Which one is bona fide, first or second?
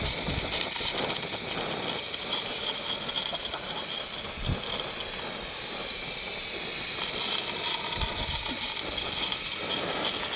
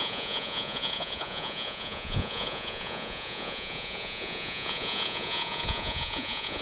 first